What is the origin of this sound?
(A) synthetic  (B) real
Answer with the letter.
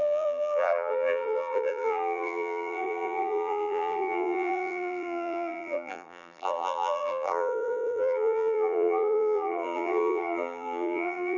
A